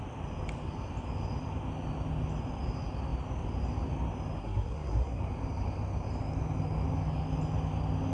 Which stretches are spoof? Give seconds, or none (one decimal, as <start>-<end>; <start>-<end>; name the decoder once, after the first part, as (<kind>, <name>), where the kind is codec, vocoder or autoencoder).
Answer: 4.4-5.2 (codec, SNAC)